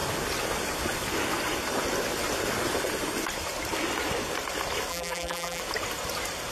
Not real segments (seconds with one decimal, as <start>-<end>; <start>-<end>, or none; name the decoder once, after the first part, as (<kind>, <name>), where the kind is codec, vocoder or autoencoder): 4.9-5.6 (vocoder, BigVGAN v2)